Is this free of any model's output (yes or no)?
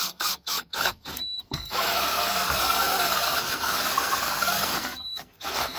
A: no